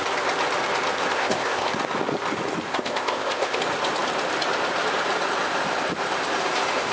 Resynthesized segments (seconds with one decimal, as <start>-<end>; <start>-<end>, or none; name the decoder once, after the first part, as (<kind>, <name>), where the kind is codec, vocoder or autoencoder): 1.1-1.7 (codec, ZipCodec); 2.7-3.6